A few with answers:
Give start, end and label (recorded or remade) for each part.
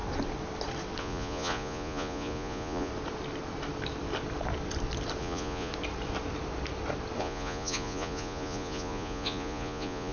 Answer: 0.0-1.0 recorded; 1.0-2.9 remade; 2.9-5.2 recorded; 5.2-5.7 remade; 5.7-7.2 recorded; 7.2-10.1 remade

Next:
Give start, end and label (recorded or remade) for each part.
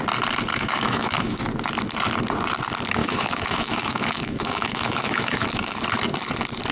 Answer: 0.0-0.5 recorded; 0.5-1.4 remade; 1.4-3.0 recorded; 3.0-5.8 remade; 5.8-6.7 recorded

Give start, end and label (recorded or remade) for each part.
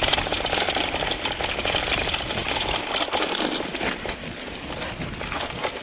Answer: 0.0-5.8 recorded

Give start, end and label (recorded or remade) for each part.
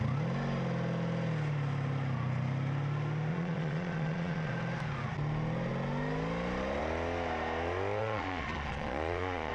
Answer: 0.0-3.3 recorded; 3.3-4.5 remade; 4.5-8.0 recorded; 8.0-9.5 remade